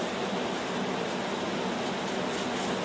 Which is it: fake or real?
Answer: real